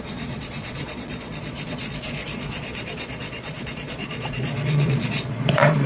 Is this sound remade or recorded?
remade